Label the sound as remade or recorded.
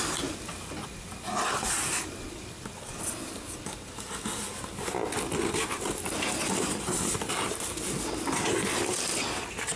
recorded